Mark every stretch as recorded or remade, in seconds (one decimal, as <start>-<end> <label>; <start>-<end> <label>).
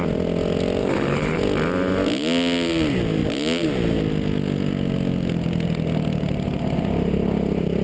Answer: 0.0-0.8 recorded; 0.8-1.4 remade; 1.4-7.8 recorded